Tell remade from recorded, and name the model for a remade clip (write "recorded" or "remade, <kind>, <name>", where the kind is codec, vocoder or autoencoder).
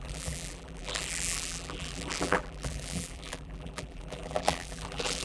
remade, vocoder, BigVGAN v2